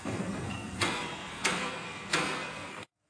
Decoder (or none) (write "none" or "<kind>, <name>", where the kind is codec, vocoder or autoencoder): codec, SNAC